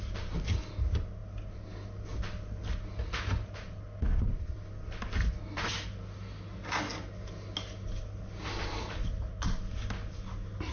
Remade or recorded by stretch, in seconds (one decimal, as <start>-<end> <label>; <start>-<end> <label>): 0.0-10.7 recorded